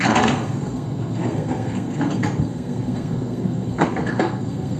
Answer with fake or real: fake